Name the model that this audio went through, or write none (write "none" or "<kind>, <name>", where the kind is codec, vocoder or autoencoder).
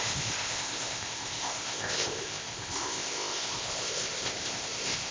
codec, ZipCodec